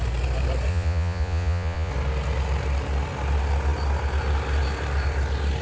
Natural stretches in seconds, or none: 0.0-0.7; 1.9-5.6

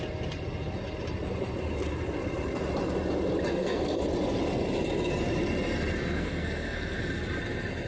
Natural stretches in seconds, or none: 0.0-3.5; 4.0-6.0; 7.0-7.9

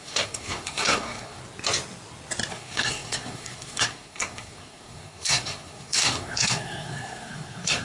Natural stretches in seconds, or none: 1.4-2.5

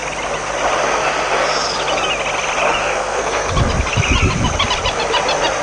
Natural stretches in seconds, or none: 0.0-2.8; 3.5-5.6